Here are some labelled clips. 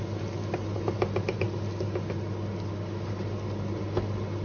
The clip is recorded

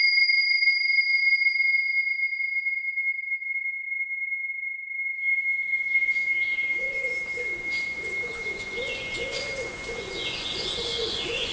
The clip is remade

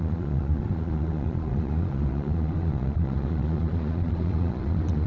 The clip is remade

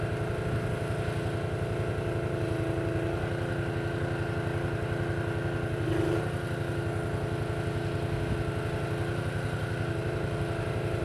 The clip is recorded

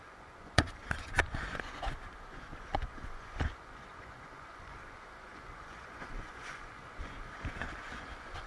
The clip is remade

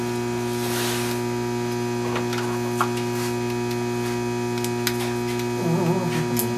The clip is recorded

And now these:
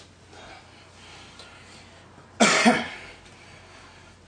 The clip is recorded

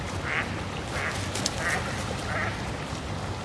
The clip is recorded